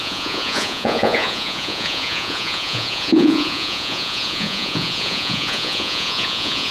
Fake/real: fake